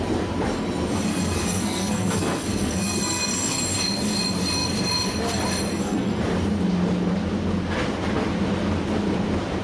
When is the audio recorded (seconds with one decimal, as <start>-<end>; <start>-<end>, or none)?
0.0-1.1; 3.6-5.7; 6.2-9.6

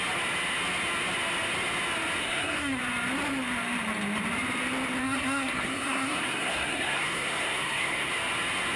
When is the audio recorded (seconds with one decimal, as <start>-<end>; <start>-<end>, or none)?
0.0-2.2; 2.8-5.0; 8.1-8.8